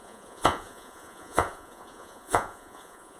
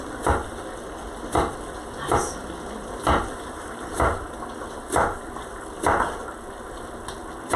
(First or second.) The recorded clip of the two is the second